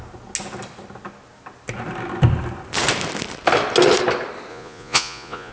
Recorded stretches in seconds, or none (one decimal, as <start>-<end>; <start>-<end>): 0.0-4.5